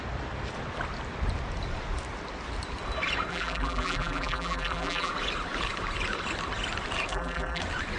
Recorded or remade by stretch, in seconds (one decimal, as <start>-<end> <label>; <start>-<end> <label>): 0.0-3.3 recorded; 3.3-5.1 remade; 5.1-7.1 recorded; 7.1-7.6 remade; 7.6-8.0 recorded